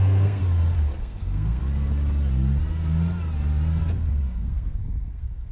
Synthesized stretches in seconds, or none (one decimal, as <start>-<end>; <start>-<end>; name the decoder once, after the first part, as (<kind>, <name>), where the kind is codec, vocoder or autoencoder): 0.0-0.4 (codec, SNAC); 1.0-1.6; 4.1-5.5